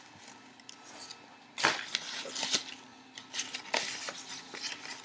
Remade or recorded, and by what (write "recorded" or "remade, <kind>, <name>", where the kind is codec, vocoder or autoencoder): recorded